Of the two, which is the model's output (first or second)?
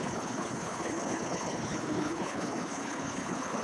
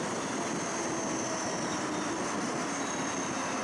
first